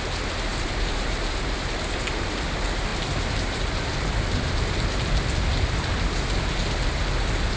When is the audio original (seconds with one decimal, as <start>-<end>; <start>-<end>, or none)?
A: 0.0-0.5; 2.3-7.6